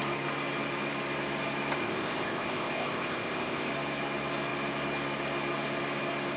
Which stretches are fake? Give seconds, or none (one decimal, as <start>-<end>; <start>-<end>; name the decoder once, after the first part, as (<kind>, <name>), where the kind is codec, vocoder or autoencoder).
1.8-3.7 (codec, ZipCodec)